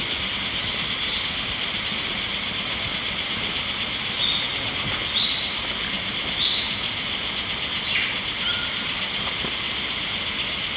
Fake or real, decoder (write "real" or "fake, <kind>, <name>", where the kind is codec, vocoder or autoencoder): real